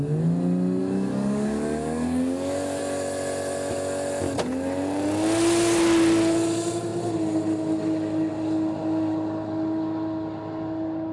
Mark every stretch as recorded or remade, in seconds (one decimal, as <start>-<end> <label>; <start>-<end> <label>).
0.0-0.8 recorded; 0.8-2.8 remade; 2.8-11.1 recorded